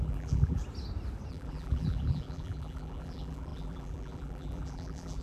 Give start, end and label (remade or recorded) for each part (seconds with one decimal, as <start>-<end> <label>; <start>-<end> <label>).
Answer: 0.0-0.6 remade; 0.6-1.3 recorded; 1.3-5.2 remade

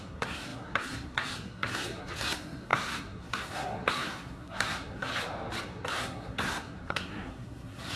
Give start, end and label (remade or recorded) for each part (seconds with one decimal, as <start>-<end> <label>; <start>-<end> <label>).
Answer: 0.0-5.1 remade; 5.1-5.6 recorded; 5.6-8.0 remade

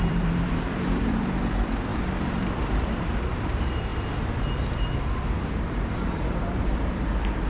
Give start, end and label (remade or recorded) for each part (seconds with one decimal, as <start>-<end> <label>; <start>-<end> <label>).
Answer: 0.0-7.5 remade

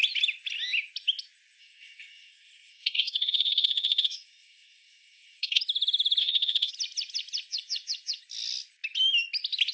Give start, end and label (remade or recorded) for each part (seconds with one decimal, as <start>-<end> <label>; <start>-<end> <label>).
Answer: 0.0-1.6 recorded; 1.6-5.6 remade; 5.6-6.2 recorded; 6.2-6.7 remade; 6.7-9.7 recorded